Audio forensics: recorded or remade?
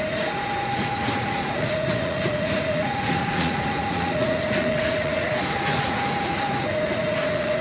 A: remade